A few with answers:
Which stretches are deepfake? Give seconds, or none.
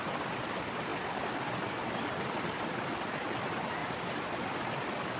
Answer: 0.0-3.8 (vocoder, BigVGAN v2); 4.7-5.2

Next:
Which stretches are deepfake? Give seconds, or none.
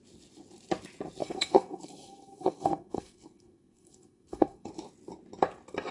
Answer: 1.2-4.7 (codec, SNAC)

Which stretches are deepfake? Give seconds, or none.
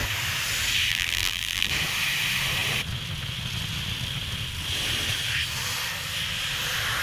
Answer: 0.9-1.7 (vocoder, BigVGAN v2)